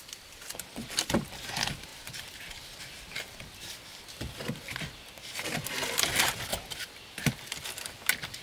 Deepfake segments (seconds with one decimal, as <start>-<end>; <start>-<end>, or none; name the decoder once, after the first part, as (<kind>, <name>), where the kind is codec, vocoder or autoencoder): none